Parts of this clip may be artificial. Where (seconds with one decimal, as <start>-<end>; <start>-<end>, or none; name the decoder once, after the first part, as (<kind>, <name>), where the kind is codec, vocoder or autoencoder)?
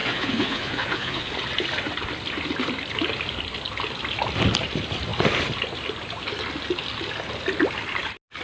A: 0.0-1.3 (vocoder, Vocos)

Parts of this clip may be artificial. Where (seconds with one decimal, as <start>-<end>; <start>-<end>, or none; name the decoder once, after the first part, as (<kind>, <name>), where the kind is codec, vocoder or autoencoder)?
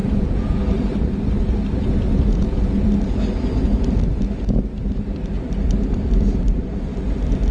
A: 0.0-0.6 (vocoder, Vocos); 2.1-2.8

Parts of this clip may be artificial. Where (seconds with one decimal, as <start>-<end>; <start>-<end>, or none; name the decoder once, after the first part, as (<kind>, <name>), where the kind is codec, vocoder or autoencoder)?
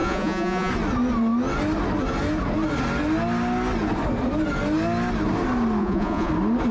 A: 0.0-0.7 (vocoder, Vocos); 5.8-6.3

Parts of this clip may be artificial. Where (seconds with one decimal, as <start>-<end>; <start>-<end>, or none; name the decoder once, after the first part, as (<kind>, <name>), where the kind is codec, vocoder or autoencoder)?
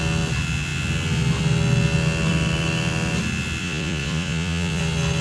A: 3.6-4.8 (vocoder, Vocos)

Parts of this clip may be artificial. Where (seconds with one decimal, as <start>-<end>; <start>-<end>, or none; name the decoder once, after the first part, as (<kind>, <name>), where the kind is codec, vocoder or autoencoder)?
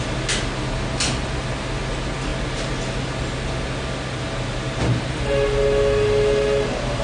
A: none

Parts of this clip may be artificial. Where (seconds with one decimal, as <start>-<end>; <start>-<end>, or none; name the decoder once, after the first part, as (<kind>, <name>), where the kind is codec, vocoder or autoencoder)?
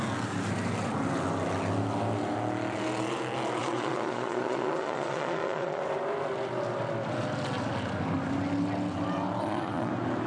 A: 3.6-5.8 (vocoder, Vocos); 9.4-9.9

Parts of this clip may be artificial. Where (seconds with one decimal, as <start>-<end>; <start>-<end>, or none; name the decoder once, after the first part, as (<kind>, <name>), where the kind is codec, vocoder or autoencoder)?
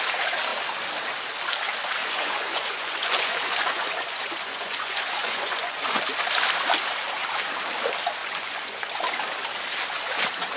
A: 2.0-6.0 (vocoder, Vocos); 8.2-8.9